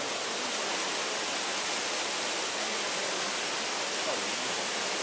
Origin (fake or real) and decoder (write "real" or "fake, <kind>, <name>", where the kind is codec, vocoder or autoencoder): real